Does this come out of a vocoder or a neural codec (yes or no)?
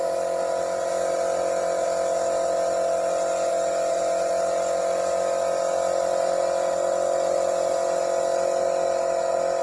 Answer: no